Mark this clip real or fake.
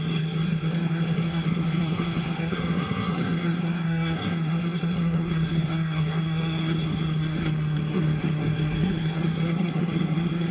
fake